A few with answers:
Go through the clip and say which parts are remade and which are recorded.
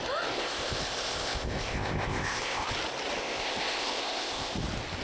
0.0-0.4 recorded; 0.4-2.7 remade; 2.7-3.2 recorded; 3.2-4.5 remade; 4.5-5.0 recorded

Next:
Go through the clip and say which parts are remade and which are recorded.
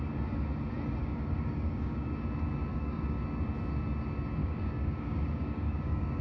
0.0-1.0 recorded; 1.0-2.1 remade; 2.1-2.7 recorded; 2.7-3.2 remade; 3.2-4.4 recorded; 4.4-6.2 remade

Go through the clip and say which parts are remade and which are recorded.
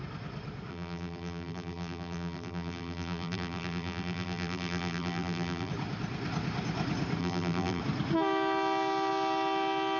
0.0-0.7 recorded; 0.7-5.7 remade; 5.7-7.2 recorded; 7.2-7.8 remade; 7.8-10.0 recorded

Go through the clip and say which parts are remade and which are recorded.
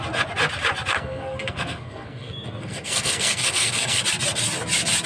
0.0-0.9 recorded; 0.9-4.0 remade; 4.0-5.1 recorded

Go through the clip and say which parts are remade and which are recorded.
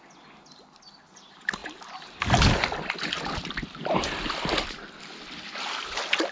0.0-6.3 recorded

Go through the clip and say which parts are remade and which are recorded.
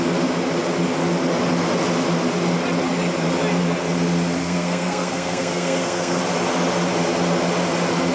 0.0-4.4 recorded; 4.4-6.2 remade; 6.2-8.1 recorded